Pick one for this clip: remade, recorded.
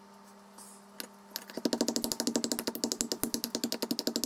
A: recorded